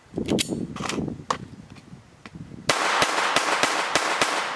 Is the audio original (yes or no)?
yes